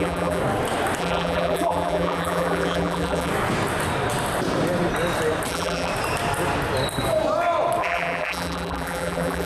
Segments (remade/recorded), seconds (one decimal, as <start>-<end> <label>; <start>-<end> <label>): 0.0-0.4 remade; 0.4-1.0 recorded; 1.0-3.3 remade; 3.3-5.5 recorded; 5.5-5.9 remade; 5.9-7.8 recorded; 7.8-9.5 remade